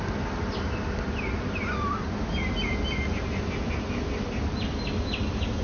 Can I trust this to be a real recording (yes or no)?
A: yes